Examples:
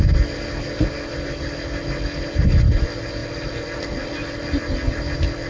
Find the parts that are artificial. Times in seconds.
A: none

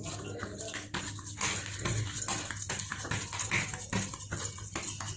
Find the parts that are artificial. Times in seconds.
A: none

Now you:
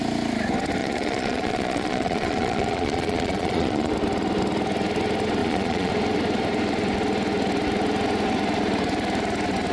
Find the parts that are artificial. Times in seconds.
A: 0.8-3.9 (vocoder, Vocos); 5.4-5.9